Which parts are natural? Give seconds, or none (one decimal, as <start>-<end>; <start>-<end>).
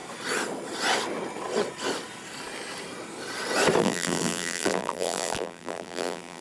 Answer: 0.0-3.8